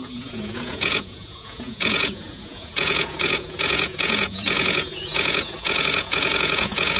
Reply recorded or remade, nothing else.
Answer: remade